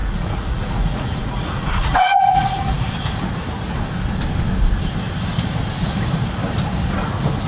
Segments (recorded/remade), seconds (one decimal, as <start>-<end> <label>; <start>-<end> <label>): 0.0-2.9 remade; 2.9-7.5 recorded